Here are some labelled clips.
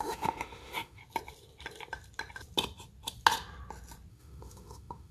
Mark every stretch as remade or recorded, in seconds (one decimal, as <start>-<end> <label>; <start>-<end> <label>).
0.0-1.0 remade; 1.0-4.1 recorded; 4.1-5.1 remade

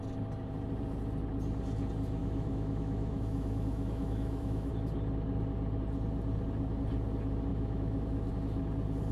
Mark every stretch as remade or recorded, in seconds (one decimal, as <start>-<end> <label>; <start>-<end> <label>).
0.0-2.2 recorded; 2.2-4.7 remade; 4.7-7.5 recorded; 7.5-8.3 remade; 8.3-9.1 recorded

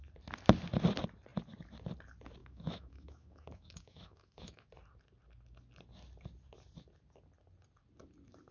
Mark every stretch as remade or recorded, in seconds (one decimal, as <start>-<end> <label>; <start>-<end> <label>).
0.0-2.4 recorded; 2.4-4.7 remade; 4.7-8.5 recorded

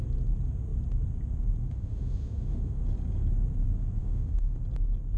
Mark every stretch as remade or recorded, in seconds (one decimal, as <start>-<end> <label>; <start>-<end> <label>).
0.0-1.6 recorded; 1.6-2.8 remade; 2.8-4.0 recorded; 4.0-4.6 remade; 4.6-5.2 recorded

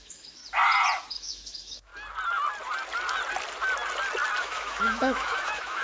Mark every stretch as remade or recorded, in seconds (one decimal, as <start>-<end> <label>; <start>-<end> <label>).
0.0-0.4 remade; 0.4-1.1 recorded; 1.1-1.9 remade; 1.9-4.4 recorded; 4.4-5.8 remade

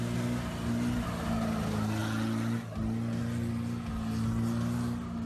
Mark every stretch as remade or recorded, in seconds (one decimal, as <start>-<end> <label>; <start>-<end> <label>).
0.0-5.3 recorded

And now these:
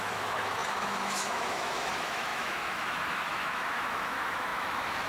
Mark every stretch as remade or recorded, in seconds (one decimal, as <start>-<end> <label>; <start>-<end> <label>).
0.0-5.1 remade

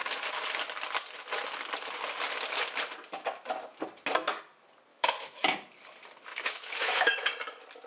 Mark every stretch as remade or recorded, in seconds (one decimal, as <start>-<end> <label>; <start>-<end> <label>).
0.0-4.9 recorded; 4.9-5.5 remade; 5.5-6.3 recorded; 6.3-7.3 remade; 7.3-7.9 recorded